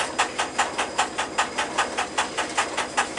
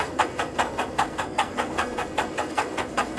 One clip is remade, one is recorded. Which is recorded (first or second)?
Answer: first